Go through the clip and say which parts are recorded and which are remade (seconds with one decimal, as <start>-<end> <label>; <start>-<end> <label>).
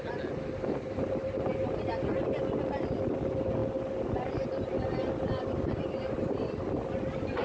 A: 0.0-7.4 recorded